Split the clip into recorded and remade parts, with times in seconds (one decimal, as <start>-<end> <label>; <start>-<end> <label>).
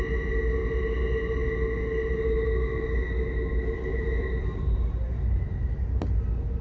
0.0-3.9 recorded; 3.9-4.8 remade; 4.8-6.6 recorded